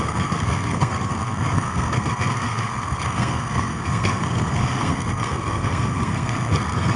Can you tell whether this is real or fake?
fake